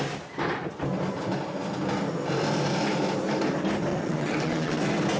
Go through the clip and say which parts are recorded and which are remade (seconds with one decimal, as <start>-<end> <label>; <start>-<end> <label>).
0.0-3.9 recorded; 3.9-4.8 remade; 4.8-5.2 recorded